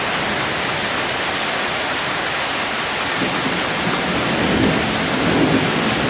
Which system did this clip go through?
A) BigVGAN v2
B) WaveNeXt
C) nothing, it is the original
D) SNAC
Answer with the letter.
C